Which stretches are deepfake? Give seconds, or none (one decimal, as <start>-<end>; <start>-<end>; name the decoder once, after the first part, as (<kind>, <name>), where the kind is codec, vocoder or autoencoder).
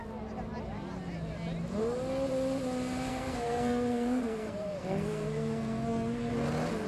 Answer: 3.1-6.3 (codec, SNAC)